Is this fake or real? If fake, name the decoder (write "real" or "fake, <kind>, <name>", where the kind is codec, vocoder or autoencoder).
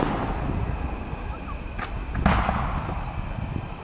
real